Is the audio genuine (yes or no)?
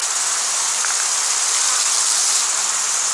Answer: yes